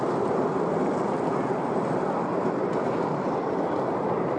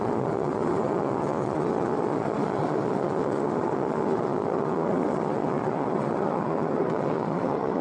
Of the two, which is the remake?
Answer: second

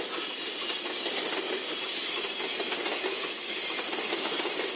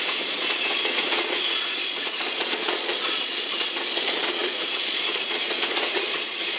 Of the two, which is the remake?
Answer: second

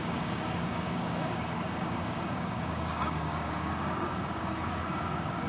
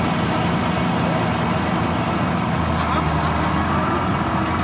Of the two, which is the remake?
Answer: first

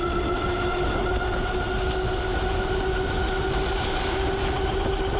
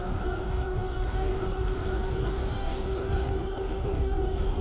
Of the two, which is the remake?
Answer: second